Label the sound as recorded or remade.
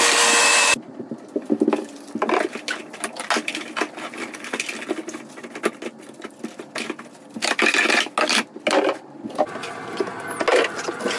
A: recorded